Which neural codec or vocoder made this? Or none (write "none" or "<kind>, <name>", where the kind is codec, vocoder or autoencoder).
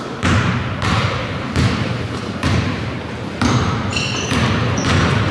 vocoder, BigVGAN v2